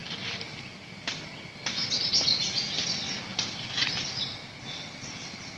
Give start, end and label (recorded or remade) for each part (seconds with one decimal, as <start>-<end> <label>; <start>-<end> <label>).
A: 0.0-5.6 recorded